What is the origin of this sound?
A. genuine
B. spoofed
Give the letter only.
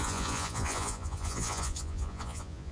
B